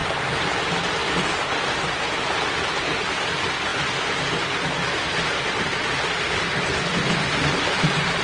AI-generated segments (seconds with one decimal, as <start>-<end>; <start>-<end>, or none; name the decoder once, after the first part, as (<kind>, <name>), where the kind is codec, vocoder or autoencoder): none